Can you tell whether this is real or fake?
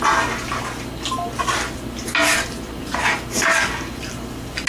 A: real